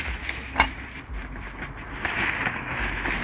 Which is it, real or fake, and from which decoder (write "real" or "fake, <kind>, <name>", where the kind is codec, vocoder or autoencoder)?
real